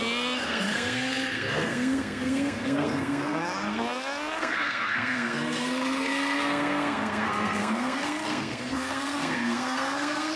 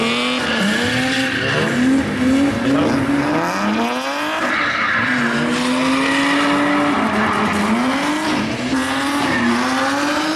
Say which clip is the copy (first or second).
first